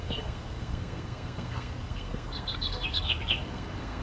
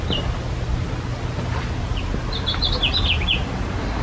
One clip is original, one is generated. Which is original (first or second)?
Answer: second